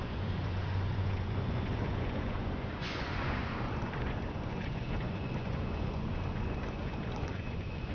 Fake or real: fake